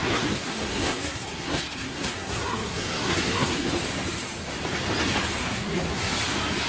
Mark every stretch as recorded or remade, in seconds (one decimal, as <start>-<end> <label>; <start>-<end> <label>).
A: 0.0-3.7 remade; 3.7-5.4 recorded; 5.4-6.1 remade; 6.1-6.7 recorded